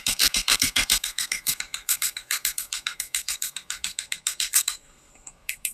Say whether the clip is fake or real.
fake